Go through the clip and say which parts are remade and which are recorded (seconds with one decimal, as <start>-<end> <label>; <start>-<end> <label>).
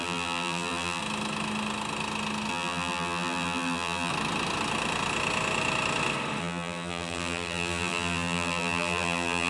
0.0-1.0 remade; 1.0-2.5 recorded; 2.5-4.1 remade; 4.1-6.4 recorded; 6.4-9.5 remade